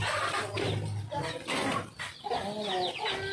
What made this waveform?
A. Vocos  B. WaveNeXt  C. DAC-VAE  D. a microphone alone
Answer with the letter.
D